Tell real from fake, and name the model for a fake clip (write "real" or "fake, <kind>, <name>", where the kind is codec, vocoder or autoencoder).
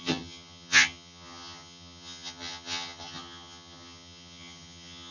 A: fake, vocoder, HiFi-GAN